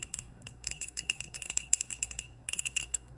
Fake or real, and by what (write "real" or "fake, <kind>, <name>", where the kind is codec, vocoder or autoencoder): fake, codec, SNAC